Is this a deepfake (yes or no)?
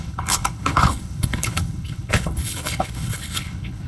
yes